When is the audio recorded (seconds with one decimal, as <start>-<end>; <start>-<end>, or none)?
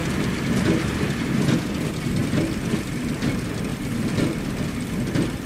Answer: 1.6-2.2; 3.0-3.7